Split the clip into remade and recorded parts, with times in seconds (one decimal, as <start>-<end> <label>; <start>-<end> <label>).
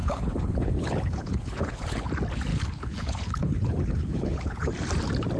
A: 0.0-2.1 remade; 2.1-2.5 recorded; 2.5-4.7 remade; 4.7-5.4 recorded